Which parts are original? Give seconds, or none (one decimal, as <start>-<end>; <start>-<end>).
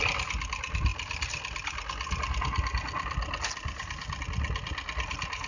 0.0-5.5